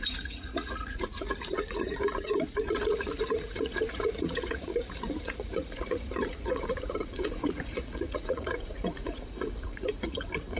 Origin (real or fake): fake